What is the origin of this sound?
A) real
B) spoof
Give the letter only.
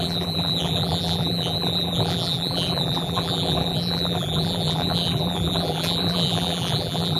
B